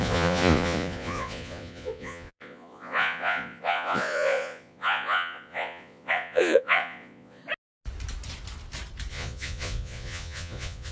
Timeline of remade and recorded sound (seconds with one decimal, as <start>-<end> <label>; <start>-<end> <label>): 0.0-7.4 remade; 7.4-9.1 recorded; 9.1-10.9 remade